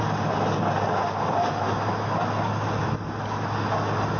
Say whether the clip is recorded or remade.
recorded